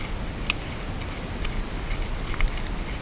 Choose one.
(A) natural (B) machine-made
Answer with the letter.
A